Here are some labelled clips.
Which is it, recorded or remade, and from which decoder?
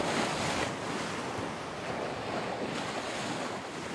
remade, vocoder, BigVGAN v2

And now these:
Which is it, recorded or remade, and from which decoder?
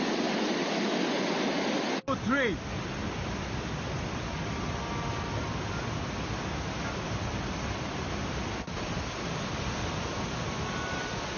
recorded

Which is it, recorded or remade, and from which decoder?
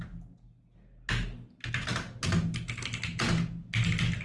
recorded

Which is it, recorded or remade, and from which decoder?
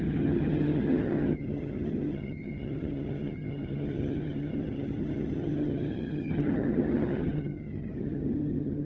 remade, vocoder, HiFi-GAN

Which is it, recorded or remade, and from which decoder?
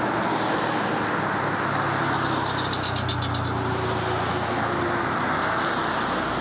recorded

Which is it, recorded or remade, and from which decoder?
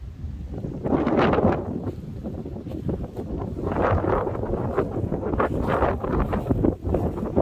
recorded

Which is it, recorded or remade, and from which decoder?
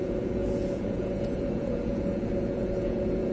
remade, vocoder, Vocos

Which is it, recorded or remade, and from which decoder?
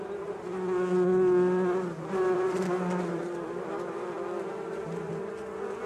recorded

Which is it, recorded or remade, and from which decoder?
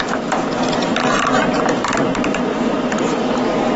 remade, vocoder, BigVGAN v2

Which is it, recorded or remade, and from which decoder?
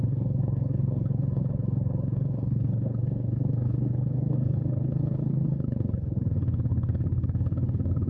remade, codec, HILCodec